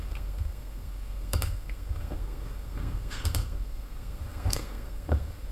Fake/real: fake